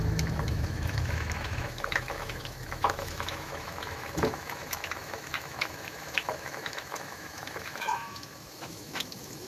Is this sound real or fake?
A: fake